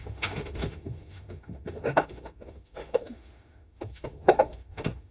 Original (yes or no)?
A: no